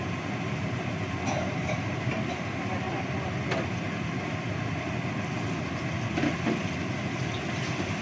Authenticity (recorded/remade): recorded